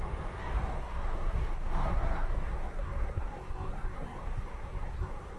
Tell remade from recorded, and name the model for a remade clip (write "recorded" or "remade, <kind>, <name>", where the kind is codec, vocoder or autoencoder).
remade, codec, SNAC